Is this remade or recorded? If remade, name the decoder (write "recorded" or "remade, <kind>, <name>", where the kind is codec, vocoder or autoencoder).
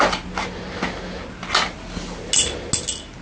recorded